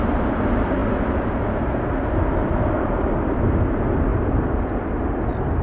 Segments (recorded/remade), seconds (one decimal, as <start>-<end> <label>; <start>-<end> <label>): 0.0-5.6 recorded